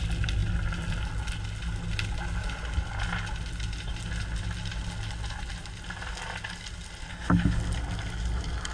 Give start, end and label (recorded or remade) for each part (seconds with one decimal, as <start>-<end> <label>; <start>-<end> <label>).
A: 0.0-7.1 recorded; 7.1-7.6 remade; 7.6-8.7 recorded